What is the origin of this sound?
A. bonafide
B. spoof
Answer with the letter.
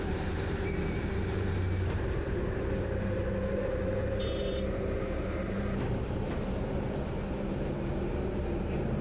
B